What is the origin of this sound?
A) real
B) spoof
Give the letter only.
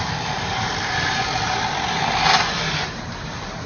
A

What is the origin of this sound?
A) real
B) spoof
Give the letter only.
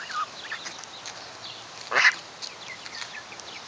A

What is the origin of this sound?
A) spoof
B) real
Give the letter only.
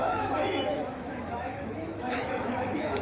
A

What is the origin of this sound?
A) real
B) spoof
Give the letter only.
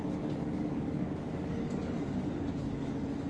B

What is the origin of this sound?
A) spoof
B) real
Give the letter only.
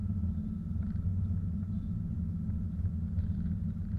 A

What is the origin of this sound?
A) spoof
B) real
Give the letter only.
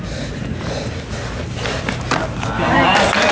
B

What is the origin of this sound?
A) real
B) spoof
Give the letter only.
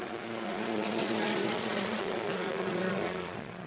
B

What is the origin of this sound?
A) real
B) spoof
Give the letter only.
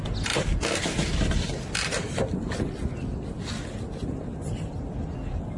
A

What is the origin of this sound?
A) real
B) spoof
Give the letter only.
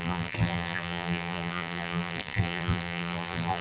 B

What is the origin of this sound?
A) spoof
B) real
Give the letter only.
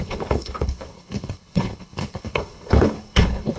A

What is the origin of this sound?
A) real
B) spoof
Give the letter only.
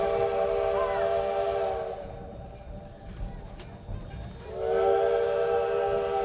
A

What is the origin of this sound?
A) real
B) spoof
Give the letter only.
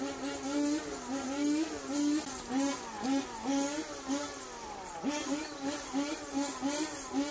A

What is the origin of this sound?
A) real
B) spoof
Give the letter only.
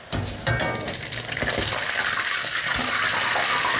A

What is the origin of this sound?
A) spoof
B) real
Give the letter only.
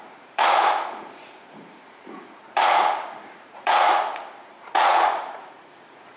A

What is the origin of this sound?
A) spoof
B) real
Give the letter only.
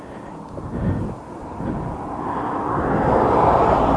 B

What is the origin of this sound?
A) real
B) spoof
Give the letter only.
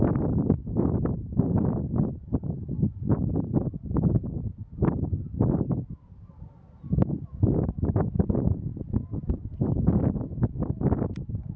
A